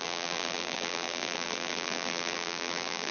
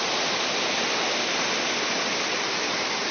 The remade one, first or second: first